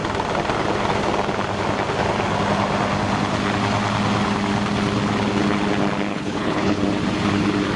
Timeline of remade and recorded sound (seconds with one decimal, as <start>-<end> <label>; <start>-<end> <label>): 0.0-6.1 recorded; 6.1-6.8 remade; 6.8-7.8 recorded